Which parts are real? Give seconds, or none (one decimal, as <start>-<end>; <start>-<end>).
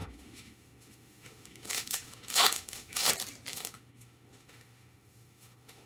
3.1-3.5